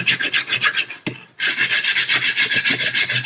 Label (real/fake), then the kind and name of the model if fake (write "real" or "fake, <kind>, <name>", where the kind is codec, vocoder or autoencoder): real